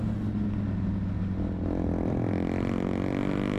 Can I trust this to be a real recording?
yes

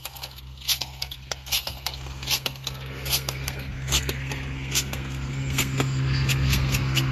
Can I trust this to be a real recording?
no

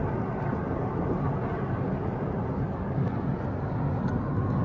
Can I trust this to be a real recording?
yes